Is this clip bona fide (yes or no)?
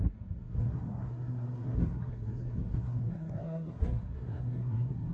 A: no